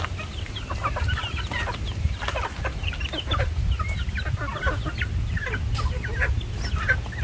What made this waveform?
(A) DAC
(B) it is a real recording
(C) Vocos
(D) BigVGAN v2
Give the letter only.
B